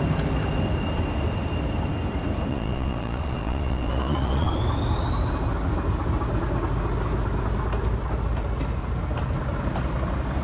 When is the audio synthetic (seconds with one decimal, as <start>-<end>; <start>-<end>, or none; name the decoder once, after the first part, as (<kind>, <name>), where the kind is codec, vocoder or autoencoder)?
2.5-4.5 (vocoder, Vocos)